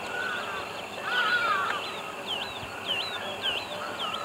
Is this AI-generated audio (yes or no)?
no